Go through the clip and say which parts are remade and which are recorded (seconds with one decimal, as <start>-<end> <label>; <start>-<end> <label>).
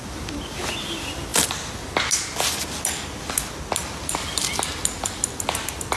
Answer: 0.0-6.0 recorded